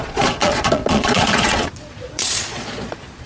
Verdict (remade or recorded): remade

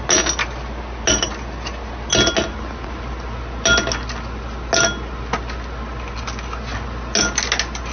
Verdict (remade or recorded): recorded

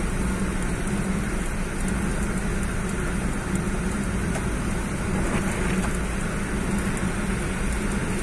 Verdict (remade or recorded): recorded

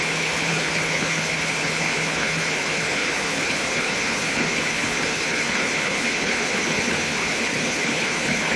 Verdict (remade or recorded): remade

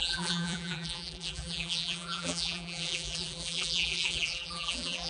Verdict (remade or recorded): remade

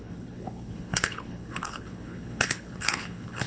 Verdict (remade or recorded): remade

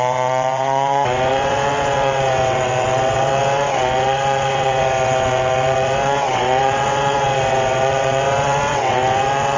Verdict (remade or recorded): remade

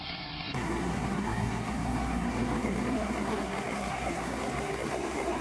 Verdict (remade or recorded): remade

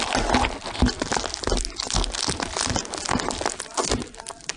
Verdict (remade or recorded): recorded